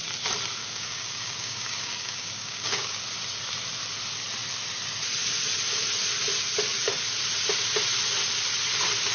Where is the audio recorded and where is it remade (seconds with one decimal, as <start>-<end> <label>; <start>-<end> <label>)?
0.0-0.6 recorded; 0.6-3.0 remade; 3.0-9.1 recorded